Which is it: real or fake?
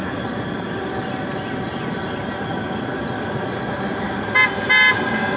real